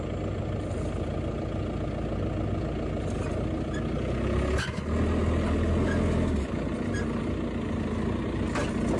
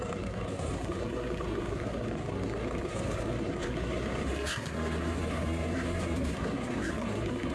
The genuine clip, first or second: first